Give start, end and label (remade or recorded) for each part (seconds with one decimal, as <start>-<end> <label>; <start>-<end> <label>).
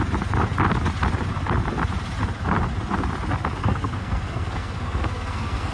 0.0-3.6 recorded; 3.6-5.7 remade